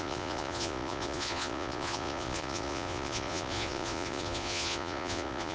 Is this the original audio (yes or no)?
no